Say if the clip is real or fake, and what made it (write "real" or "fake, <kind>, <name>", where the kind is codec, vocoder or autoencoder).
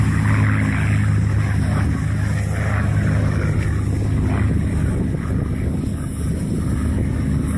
real